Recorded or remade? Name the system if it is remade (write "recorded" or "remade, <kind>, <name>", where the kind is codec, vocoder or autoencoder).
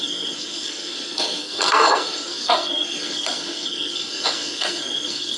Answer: remade, codec, SNAC